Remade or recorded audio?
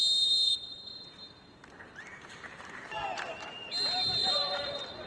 remade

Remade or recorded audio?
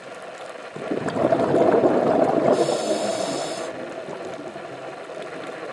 recorded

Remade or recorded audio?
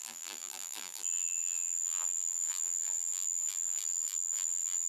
remade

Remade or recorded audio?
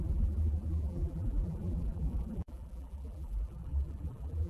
remade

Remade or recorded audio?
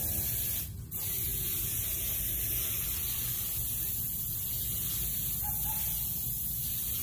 recorded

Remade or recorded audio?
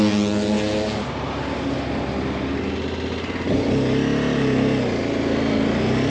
recorded